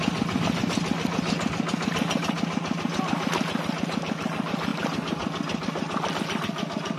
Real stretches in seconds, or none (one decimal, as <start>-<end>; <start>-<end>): 0.0-7.0